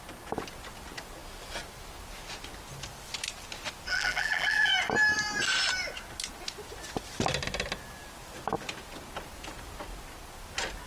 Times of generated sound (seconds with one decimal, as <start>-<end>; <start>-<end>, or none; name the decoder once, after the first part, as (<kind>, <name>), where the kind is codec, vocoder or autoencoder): 3.9-4.7 (vocoder, BigVGAN v2)